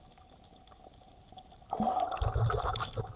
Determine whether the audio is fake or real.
real